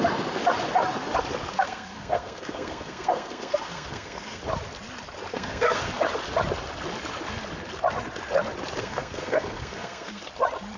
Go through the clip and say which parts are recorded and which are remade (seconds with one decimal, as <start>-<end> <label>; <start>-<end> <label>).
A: 0.0-1.5 recorded; 1.5-4.4 remade; 4.4-5.3 recorded; 5.3-5.9 remade; 5.9-8.8 recorded; 8.8-10.2 remade; 10.2-10.8 recorded

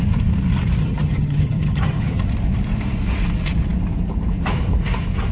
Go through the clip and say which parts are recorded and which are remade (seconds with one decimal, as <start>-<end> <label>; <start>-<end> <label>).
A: 0.0-0.8 recorded; 0.8-2.2 remade; 2.2-5.3 recorded

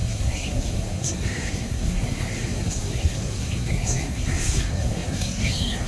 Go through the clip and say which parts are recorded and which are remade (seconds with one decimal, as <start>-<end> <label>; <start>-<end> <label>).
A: 0.0-5.9 remade

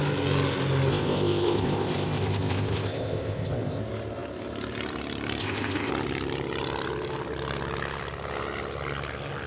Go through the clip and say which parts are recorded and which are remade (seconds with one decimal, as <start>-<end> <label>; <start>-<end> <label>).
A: 0.0-0.9 recorded; 0.9-3.8 remade; 3.8-5.4 recorded; 5.4-5.9 remade; 5.9-9.5 recorded

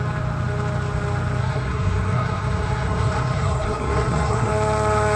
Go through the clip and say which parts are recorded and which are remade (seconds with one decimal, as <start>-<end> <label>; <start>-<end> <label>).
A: 0.0-1.4 recorded; 1.4-4.5 remade; 4.5-5.2 recorded

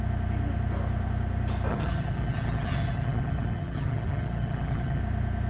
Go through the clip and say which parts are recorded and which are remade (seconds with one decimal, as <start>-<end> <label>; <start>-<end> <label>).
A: 0.0-1.7 recorded; 1.7-5.0 remade; 5.0-5.5 recorded